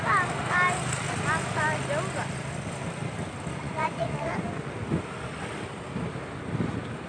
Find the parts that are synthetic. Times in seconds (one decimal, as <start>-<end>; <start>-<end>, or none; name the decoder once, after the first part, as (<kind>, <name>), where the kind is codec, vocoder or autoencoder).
3.5-4.7 (vocoder, Vocos)